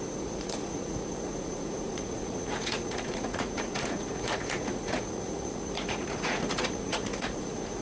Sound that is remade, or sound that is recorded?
remade